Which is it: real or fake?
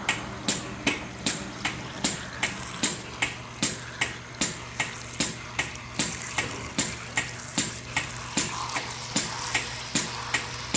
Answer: real